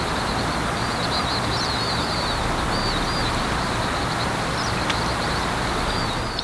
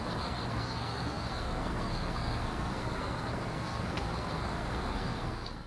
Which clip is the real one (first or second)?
first